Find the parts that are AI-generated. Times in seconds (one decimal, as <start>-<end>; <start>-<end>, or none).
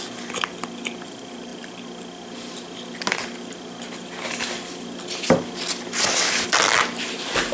none